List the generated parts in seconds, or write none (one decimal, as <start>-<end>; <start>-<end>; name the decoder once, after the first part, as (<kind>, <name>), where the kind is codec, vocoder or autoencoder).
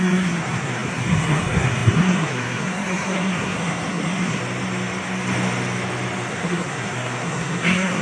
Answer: 0.0-4.4 (codec, SNAC); 6.3-8.0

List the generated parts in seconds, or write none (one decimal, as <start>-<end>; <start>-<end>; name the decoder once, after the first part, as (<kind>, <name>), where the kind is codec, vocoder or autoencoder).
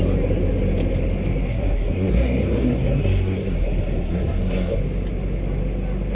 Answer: 1.5-4.8 (codec, SNAC)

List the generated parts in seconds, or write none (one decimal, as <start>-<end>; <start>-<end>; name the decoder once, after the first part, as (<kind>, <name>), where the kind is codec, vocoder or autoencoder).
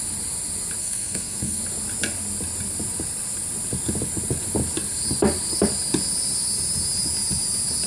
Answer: 0.8-1.6 (codec, SNAC)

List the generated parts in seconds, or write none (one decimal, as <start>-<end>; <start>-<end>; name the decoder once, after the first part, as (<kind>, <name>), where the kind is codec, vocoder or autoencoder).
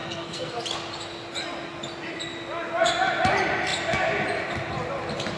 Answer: 0.0-0.6 (codec, SNAC)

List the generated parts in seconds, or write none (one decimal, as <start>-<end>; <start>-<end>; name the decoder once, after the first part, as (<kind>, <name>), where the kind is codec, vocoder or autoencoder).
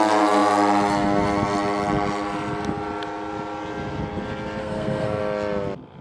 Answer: 4.6-5.2 (codec, SNAC)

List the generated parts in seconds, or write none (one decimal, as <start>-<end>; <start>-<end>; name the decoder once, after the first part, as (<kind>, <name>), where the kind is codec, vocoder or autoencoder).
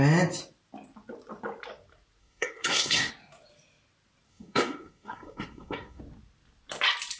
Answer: 2.2-3.1 (codec, SNAC); 4.3-6.0